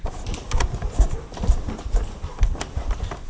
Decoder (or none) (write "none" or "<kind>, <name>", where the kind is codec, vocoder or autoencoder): none